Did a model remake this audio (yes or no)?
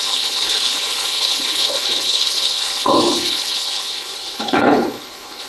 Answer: yes